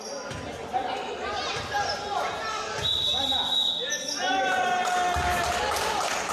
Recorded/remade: recorded